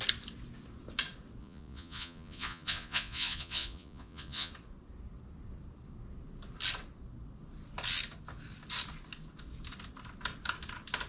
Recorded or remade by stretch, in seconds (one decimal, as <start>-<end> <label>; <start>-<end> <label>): 0.0-1.4 recorded; 1.4-4.5 remade; 4.5-11.1 recorded